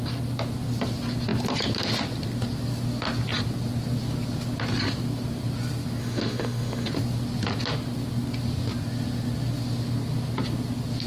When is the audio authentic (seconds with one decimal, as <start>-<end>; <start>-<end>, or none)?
0.0-6.0; 6.9-11.1